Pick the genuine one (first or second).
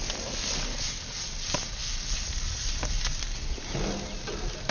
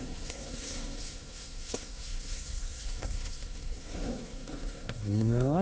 first